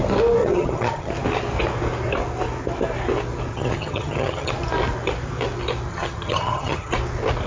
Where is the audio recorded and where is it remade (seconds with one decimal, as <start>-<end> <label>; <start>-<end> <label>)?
0.0-0.4 recorded; 0.4-1.1 remade; 1.1-3.5 recorded; 3.5-4.5 remade; 4.5-5.9 recorded; 5.9-6.9 remade; 6.9-7.5 recorded